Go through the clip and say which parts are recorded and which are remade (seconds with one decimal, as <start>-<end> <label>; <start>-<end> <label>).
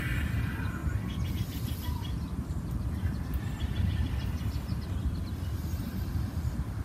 0.0-6.8 recorded